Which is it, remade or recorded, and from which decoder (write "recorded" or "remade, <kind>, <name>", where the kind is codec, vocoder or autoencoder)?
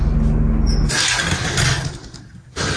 recorded